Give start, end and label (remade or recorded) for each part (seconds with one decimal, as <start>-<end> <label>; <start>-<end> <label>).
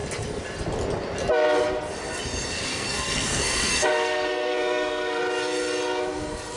0.0-2.7 recorded; 2.7-5.2 remade; 5.2-6.6 recorded